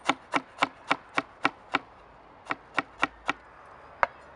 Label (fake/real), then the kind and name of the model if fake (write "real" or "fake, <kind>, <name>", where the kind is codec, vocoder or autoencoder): real